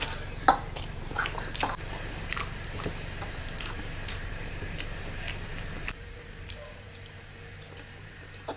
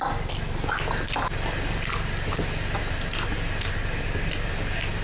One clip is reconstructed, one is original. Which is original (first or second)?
second